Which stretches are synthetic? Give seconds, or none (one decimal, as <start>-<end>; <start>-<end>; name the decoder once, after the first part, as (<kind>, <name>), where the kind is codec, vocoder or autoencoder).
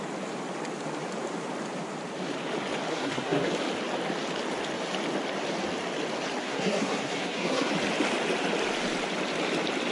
2.9-3.5 (codec, SNAC); 6.4-7.7